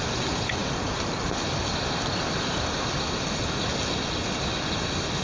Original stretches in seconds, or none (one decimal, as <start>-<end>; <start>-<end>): 0.0-5.2